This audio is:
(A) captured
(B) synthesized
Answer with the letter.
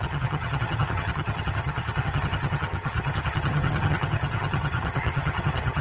B